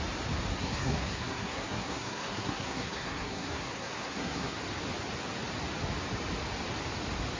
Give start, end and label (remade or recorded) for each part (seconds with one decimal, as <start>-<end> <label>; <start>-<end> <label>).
0.0-0.5 recorded; 0.5-4.6 remade; 4.6-7.4 recorded